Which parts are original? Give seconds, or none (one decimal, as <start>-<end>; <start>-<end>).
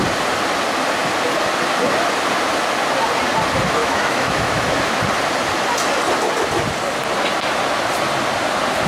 0.0-3.8; 5.0-8.9